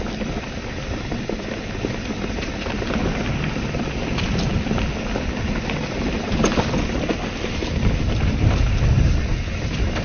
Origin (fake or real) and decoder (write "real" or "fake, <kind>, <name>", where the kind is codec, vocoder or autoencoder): real